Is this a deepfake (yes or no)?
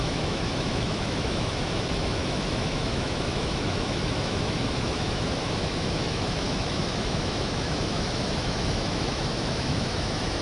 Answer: yes